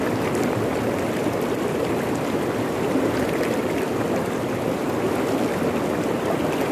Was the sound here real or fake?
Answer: real